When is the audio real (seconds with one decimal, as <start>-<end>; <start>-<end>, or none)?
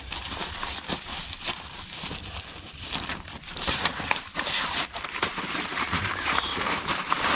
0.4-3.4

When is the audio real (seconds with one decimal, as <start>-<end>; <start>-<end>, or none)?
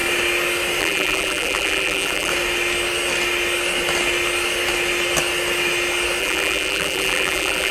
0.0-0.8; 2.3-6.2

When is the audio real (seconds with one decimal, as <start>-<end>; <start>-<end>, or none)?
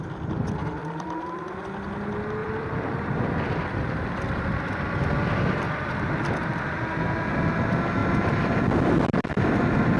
0.0-0.8; 1.6-2.4; 4.3-10.0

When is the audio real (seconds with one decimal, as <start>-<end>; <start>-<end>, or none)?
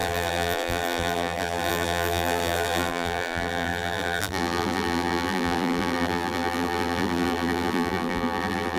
none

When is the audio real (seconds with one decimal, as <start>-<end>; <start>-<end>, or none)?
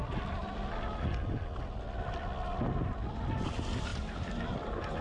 0.0-3.9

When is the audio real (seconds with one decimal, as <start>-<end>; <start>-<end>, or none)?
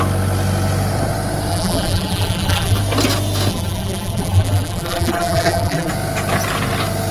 0.0-1.5; 2.8-3.5; 5.9-7.1